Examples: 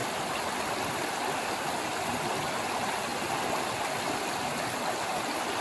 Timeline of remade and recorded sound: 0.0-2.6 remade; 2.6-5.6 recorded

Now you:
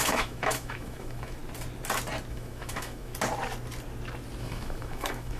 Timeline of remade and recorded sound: 0.0-1.4 remade; 1.4-2.3 recorded; 2.3-3.1 remade; 3.1-4.4 recorded; 4.4-5.4 remade

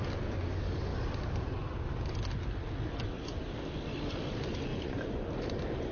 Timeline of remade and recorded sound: 0.0-4.7 recorded; 4.7-5.3 remade; 5.3-5.9 recorded

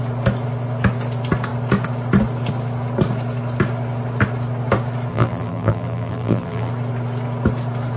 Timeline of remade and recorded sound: 0.0-5.1 recorded; 5.1-6.7 remade; 6.7-8.0 recorded

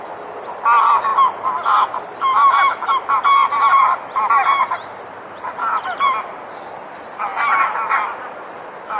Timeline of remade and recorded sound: 0.0-9.0 recorded

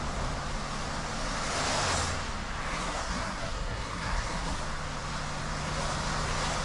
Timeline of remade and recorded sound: 0.0-2.7 recorded; 2.7-4.6 remade; 4.6-6.6 recorded